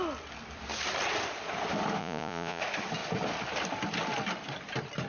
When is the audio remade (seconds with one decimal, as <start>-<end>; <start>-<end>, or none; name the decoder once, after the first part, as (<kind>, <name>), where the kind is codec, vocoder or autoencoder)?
2.0-2.6 (vocoder, Vocos)